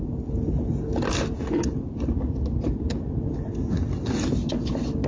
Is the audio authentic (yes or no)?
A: yes